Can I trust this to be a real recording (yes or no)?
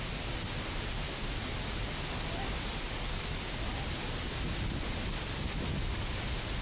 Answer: yes